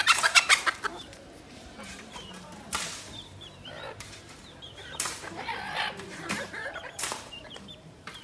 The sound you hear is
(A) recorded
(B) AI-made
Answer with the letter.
B